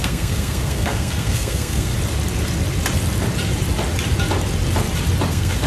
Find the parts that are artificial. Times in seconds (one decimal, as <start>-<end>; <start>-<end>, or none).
0.0-1.9; 5.3-5.7